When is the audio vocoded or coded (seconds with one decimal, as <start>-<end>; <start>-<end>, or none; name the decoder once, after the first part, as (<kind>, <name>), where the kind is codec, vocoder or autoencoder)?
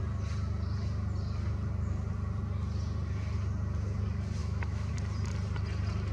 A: 4.4-4.9 (autoencoder, DAC-VAE)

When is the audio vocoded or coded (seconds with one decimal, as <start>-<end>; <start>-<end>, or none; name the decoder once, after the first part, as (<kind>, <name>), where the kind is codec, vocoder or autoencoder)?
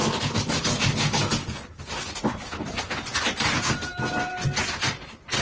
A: none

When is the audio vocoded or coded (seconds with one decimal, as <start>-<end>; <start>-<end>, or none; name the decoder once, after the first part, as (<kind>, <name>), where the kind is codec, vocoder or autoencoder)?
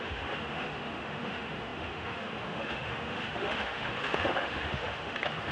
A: 0.0-5.5 (autoencoder, DAC-VAE)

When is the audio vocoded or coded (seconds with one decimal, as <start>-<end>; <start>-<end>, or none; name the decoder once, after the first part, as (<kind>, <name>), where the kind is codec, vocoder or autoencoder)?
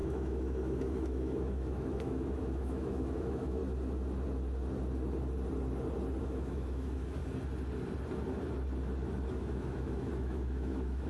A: 0.0-3.6 (autoencoder, DAC-VAE); 6.2-7.2; 9.3-11.1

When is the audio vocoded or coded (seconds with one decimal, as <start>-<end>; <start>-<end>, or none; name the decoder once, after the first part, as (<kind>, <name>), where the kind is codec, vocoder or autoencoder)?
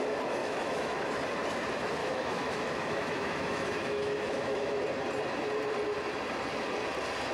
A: 0.4-1.1 (autoencoder, DAC-VAE); 2.0-4.8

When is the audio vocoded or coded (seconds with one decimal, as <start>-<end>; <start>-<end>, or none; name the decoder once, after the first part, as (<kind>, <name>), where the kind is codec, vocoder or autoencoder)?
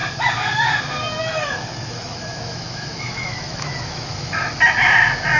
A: 1.3-4.5 (autoencoder, DAC-VAE)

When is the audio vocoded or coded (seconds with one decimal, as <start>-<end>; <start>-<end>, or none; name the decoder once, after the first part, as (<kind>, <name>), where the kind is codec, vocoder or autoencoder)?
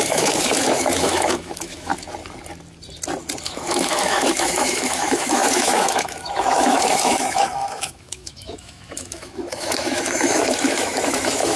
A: 0.0-1.9 (autoencoder, DAC-VAE); 3.4-11.6